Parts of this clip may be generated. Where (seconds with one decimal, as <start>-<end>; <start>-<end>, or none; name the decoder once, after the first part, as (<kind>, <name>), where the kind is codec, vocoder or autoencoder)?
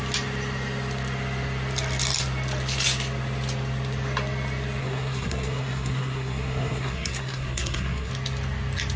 4.8-8.1 (codec, SNAC)